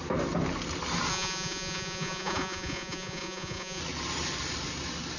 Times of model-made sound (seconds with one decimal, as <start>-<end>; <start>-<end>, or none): 1.1-3.8